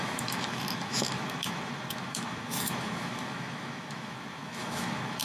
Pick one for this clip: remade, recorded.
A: remade